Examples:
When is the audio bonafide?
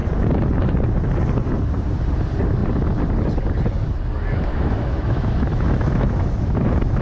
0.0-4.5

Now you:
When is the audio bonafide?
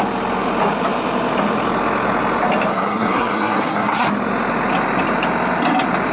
0.0-2.7; 4.1-6.1